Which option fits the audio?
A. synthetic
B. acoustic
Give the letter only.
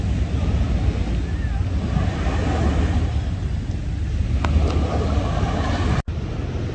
B